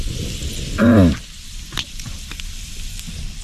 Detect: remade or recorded recorded